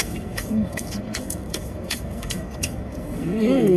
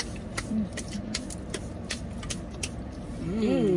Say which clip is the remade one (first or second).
first